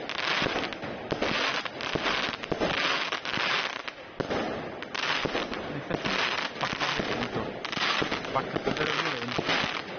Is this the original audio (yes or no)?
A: yes